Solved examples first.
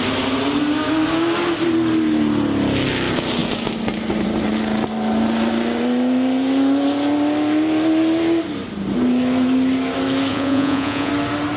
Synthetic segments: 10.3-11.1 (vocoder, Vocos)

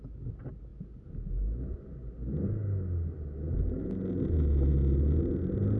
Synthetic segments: none

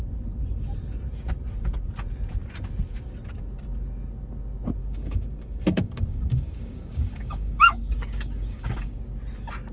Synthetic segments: 4.8-9.0 (codec, DAC)

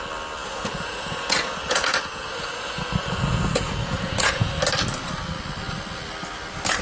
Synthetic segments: 0.4-4.5 (vocoder, Vocos)

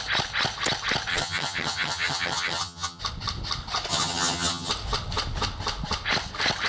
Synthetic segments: 1.1-3.0 (vocoder, HiFi-GAN); 3.9-4.7

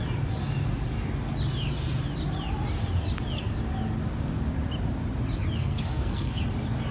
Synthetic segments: 5.6-6.4 (codec, SNAC)